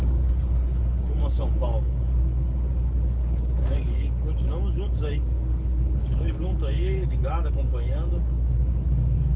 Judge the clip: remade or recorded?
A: remade